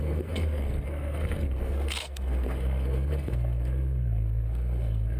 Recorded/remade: remade